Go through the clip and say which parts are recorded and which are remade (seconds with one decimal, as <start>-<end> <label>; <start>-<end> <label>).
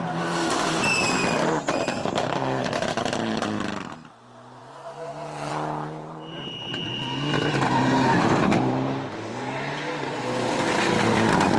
0.0-1.9 recorded; 1.9-2.8 remade; 2.8-11.6 recorded